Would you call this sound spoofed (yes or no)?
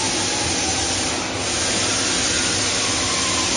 no